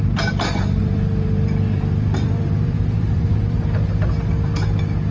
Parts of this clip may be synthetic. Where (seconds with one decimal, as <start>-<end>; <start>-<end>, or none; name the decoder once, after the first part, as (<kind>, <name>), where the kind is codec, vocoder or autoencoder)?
0.8-3.9 (vocoder, BigVGAN v2)